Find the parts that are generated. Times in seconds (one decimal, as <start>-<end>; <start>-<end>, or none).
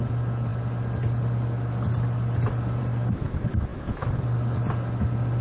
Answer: none